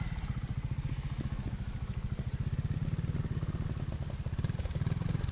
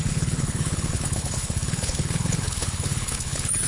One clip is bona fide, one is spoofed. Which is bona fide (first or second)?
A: first